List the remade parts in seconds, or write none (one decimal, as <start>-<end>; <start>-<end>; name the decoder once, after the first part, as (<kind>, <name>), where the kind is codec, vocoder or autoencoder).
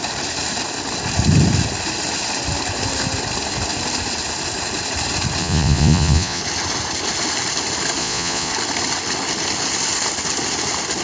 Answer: 5.4-6.4 (vocoder, Vocos); 8.0-8.5